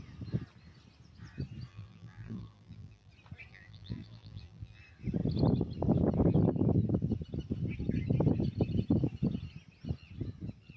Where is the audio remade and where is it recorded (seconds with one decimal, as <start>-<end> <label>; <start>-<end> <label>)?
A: 0.0-1.7 recorded; 1.7-3.1 remade; 3.1-3.5 recorded; 3.5-4.8 remade; 4.8-10.8 recorded